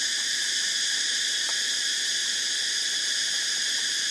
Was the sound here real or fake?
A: fake